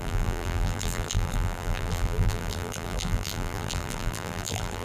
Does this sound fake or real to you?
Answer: fake